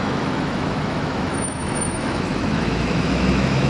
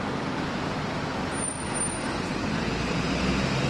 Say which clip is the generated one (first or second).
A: first